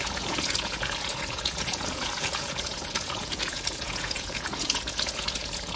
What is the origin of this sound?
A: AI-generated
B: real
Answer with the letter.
A